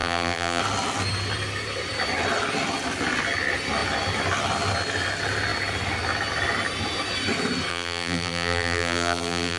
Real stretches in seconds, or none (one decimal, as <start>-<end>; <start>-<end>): 0.6-7.7